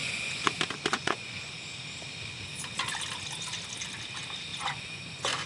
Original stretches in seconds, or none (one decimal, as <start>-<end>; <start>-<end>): 0.5-0.9; 1.5-4.5